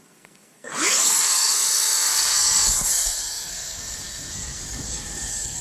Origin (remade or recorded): remade